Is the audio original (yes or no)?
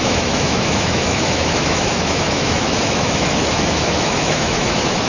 no